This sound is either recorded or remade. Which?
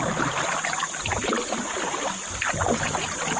recorded